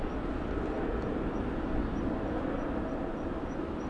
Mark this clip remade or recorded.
recorded